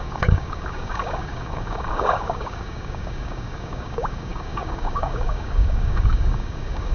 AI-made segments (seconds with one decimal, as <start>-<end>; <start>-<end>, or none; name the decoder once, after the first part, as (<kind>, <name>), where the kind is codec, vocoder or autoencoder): 0.0-6.9 (codec, DAC)